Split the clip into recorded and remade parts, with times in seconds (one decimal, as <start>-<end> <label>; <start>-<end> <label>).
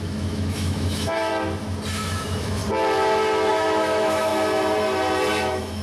0.0-1.3 remade; 1.3-1.9 recorded; 1.9-2.6 remade; 2.6-3.5 recorded; 3.5-4.3 remade; 4.3-5.3 recorded; 5.3-5.8 remade